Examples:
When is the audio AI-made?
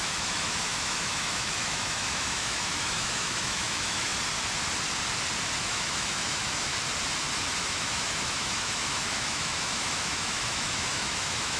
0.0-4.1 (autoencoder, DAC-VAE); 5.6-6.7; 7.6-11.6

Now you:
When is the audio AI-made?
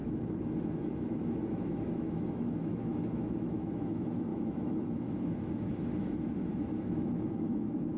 0.0-8.0 (autoencoder, DAC-VAE)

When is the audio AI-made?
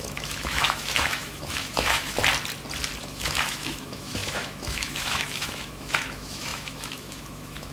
0.0-2.2 (autoencoder, DAC-VAE); 3.0-7.7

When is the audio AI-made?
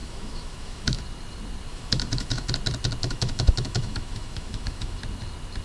0.0-1.0 (autoencoder, DAC-VAE); 1.7-2.5; 3.0-5.0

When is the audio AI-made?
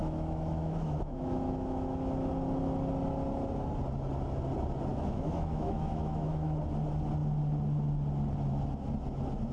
0.0-2.3 (autoencoder, DAC-VAE); 4.9-6.6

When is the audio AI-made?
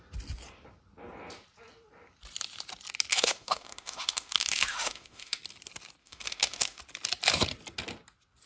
3.1-5.4 (autoencoder, DAC-VAE); 6.0-6.8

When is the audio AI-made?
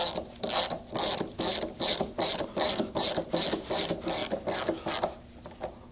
none